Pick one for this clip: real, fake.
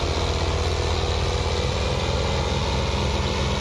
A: real